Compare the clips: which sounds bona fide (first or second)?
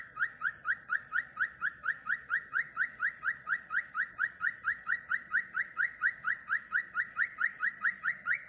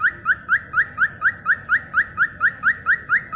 second